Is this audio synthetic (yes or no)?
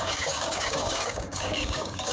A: yes